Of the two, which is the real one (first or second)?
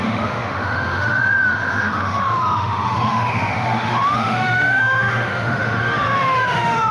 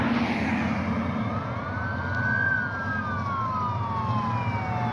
second